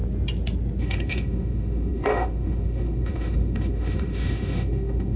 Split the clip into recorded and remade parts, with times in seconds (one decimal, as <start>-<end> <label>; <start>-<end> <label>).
0.0-0.8 recorded; 0.8-5.2 remade